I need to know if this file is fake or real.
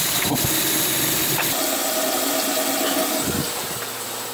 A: fake